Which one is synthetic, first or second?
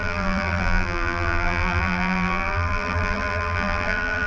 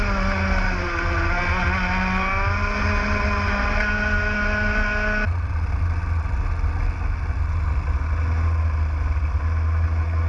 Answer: first